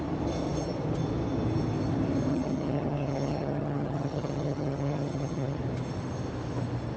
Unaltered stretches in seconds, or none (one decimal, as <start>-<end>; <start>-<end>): 0.0-2.3; 5.6-7.0